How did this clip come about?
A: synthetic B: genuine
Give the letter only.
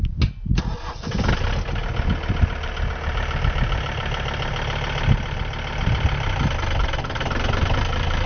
B